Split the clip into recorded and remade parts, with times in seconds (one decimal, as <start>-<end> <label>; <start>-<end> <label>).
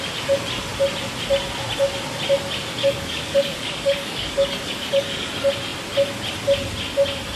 0.0-2.8 recorded; 2.8-5.3 remade; 5.3-7.4 recorded